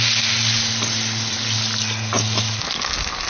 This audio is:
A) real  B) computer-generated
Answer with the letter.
A